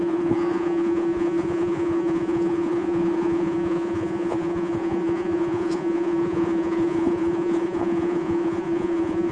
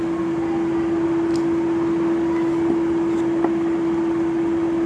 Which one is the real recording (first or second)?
second